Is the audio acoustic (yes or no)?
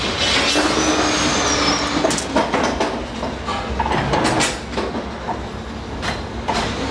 yes